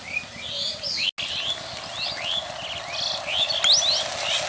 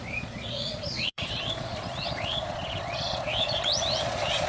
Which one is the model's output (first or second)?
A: second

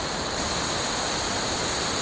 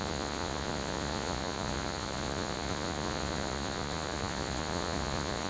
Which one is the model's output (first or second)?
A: second